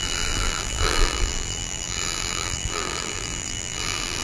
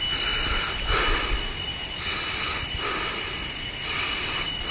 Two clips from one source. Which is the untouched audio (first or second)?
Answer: second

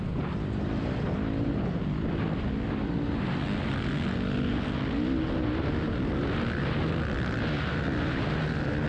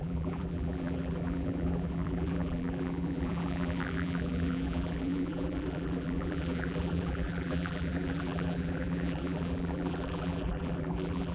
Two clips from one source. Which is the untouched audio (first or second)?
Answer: first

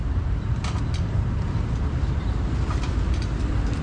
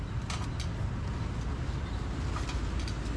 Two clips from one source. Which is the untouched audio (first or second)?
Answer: second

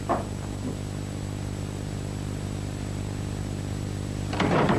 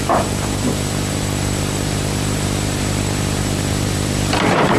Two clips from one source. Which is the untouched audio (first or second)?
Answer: first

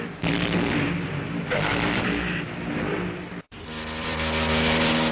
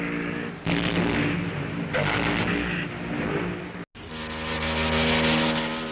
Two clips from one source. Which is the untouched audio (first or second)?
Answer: second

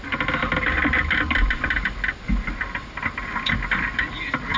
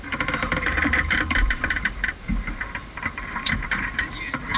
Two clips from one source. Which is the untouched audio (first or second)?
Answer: first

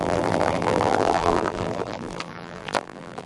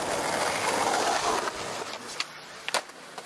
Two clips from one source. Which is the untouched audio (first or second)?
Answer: second